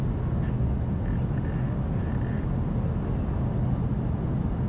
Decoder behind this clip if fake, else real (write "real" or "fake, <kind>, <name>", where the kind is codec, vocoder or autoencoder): real